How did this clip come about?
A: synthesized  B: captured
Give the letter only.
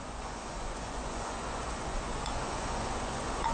A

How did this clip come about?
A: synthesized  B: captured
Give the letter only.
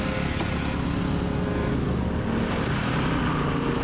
B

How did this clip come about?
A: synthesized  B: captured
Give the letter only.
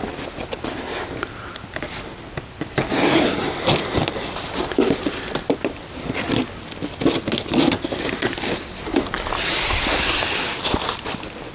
B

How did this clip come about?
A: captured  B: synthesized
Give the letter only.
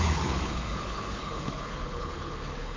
B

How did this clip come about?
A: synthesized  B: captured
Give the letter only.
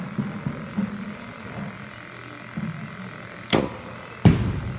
B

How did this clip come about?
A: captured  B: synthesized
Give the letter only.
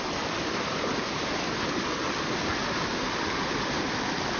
A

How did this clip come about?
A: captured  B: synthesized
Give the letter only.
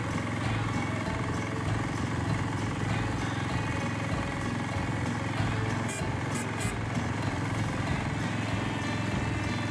A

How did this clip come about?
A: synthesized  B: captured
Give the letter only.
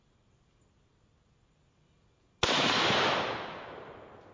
B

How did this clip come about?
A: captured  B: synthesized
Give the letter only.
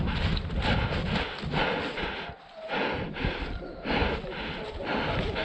A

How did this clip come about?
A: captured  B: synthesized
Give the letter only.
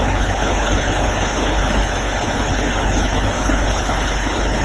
B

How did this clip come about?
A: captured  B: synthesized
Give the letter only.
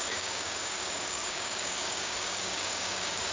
B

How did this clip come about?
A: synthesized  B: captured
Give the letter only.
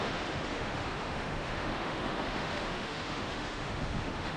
A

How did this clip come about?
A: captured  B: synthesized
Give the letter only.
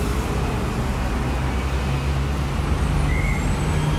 A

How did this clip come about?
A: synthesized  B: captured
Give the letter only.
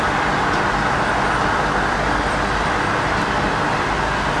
B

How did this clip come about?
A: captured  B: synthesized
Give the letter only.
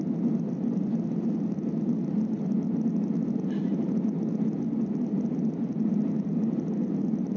A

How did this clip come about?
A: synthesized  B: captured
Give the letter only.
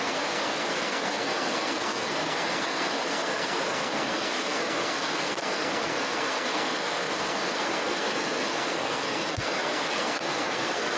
A